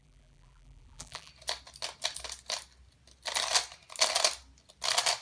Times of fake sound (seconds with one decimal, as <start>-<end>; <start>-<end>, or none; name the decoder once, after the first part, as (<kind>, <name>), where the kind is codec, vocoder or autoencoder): 0.0-1.3 (vocoder, BigVGAN v2)